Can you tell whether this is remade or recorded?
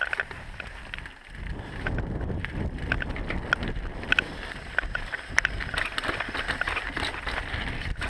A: recorded